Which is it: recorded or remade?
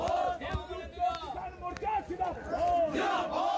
recorded